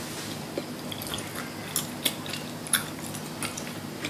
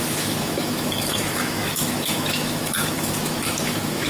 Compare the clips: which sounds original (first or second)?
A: first